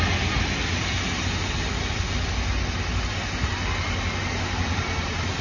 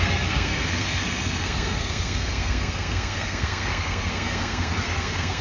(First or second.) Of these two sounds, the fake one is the second